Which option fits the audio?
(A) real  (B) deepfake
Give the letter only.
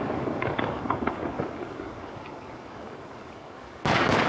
B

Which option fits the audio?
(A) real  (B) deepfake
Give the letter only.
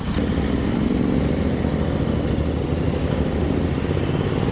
A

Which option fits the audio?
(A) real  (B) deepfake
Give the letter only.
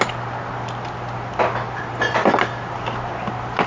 A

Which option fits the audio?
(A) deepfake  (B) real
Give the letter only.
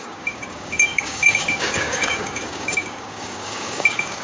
A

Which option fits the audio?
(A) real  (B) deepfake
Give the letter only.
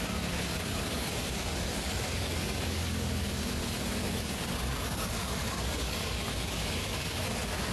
B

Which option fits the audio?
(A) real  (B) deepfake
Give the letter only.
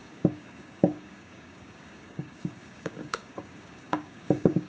B